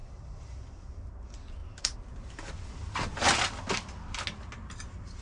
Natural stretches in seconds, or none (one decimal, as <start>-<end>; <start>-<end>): 1.2-1.6; 2.5-5.2